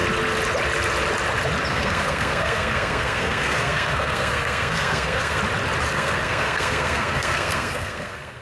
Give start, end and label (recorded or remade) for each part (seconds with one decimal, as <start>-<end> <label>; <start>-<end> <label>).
0.0-1.7 recorded; 1.7-5.4 remade; 5.4-5.9 recorded; 5.9-8.4 remade